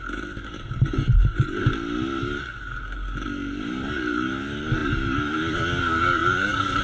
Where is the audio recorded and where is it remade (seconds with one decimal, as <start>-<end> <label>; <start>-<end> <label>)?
0.0-1.6 remade; 1.6-2.2 recorded; 2.2-6.8 remade